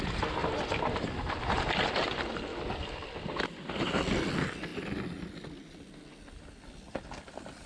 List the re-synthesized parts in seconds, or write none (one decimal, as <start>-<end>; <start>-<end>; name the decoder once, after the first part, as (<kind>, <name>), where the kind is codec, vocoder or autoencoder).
none